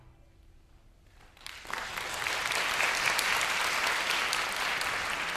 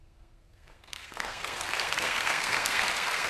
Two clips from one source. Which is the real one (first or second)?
first